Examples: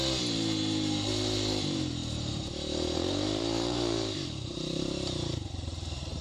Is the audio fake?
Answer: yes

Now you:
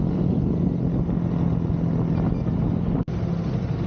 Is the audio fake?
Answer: no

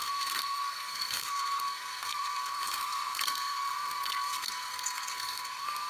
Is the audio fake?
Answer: yes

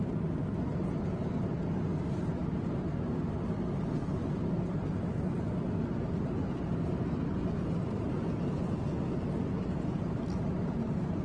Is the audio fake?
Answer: no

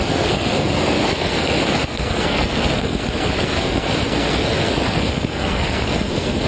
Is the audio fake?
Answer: yes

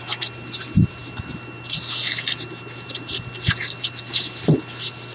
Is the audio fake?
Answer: no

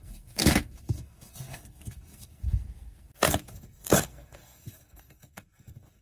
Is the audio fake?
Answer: yes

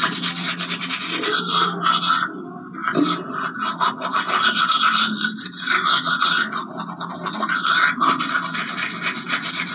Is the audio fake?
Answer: no